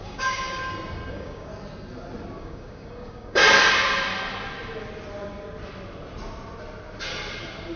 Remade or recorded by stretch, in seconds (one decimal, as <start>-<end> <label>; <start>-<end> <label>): 0.0-0.6 remade; 0.6-1.1 recorded; 1.1-1.5 remade; 1.5-2.4 recorded; 2.4-3.4 remade; 3.4-7.8 recorded